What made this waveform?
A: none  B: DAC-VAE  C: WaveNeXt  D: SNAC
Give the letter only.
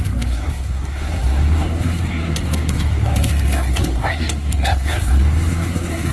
D